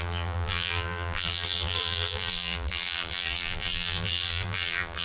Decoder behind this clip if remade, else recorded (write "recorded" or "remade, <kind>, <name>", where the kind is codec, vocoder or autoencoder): remade, vocoder, BigVGAN v2